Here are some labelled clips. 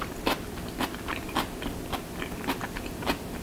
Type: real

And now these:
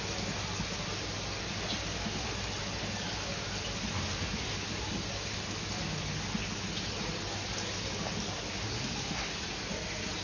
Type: real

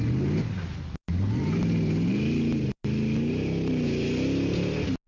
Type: real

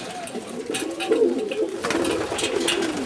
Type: real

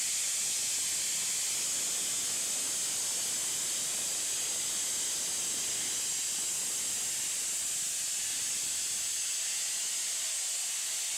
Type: real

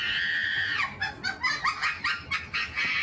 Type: real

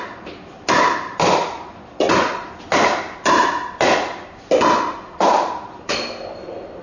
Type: real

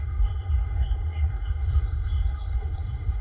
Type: fake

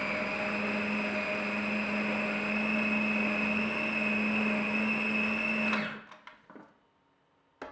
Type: real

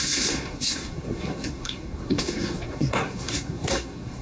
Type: fake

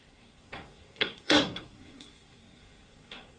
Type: fake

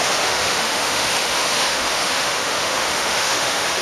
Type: fake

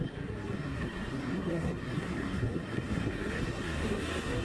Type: fake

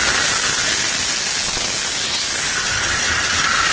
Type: real